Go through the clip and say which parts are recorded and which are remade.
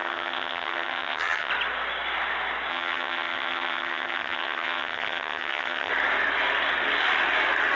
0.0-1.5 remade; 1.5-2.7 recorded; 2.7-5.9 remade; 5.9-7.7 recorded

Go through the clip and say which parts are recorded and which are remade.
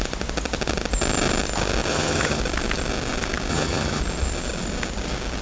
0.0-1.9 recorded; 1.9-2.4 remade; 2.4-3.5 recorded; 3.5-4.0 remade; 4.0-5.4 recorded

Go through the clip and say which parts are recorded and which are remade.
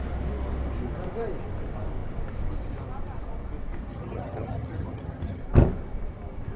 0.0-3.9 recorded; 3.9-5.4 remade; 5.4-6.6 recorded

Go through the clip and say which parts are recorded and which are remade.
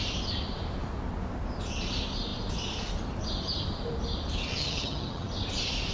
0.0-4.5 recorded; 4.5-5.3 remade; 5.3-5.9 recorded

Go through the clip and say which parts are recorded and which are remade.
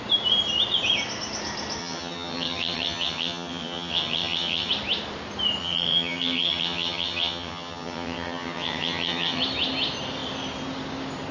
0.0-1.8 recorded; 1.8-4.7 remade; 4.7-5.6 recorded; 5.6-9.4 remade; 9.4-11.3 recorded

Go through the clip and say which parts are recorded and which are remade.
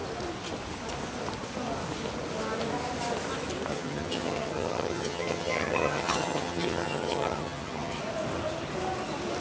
0.0-3.7 recorded; 3.7-8.0 remade; 8.0-9.4 recorded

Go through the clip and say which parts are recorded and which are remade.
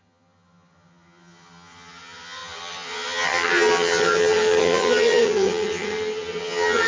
0.0-6.9 remade